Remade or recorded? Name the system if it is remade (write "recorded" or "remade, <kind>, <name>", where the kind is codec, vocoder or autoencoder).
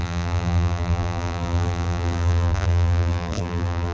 remade, vocoder, BigVGAN v2